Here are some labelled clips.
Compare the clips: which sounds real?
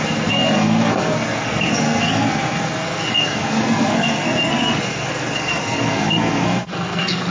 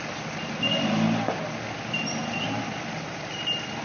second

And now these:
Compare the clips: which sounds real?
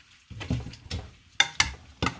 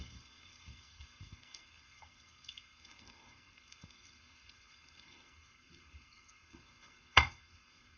first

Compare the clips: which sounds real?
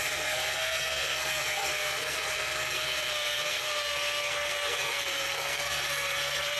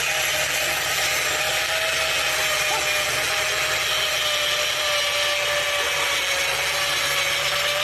second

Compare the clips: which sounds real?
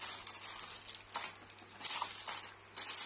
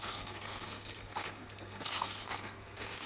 first